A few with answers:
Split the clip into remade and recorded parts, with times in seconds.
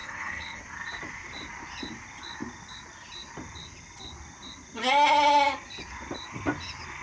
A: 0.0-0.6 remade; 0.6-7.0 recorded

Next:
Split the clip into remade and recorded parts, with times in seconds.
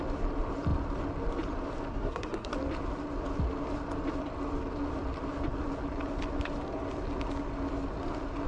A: 0.0-1.9 recorded; 1.9-2.5 remade; 2.5-8.5 recorded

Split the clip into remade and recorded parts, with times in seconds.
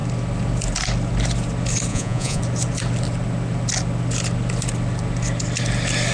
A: 0.0-1.9 recorded; 1.9-2.4 remade; 2.4-6.1 recorded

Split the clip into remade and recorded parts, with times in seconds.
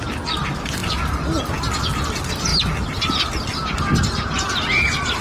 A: 0.0-5.2 recorded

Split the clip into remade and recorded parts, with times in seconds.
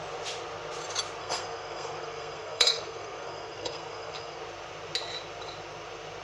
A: 0.0-1.2 recorded; 1.2-4.4 remade; 4.4-6.2 recorded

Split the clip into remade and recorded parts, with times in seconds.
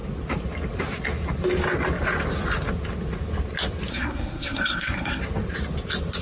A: 0.0-3.9 recorded; 3.9-5.2 remade; 5.2-6.2 recorded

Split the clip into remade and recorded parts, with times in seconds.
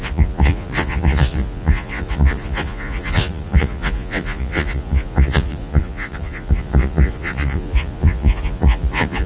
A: 0.0-9.3 remade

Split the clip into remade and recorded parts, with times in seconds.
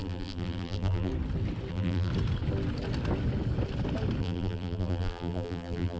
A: 0.0-1.1 remade; 1.1-1.7 recorded; 1.7-2.1 remade; 2.1-4.2 recorded; 4.2-6.0 remade